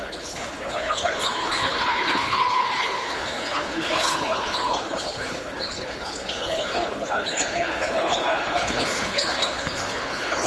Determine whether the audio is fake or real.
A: fake